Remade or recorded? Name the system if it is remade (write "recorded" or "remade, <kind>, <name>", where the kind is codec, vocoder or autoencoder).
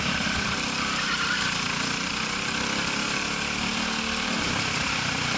recorded